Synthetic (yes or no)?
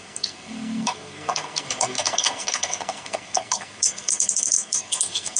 yes